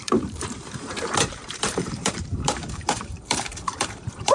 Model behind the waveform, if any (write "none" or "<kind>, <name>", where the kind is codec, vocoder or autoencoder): vocoder, BigVGAN v2